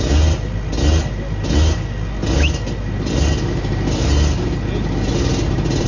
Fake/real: real